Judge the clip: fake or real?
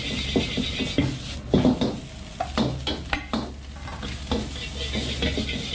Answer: real